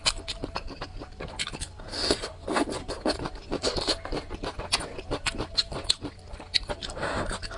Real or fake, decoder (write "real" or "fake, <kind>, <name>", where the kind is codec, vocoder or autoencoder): real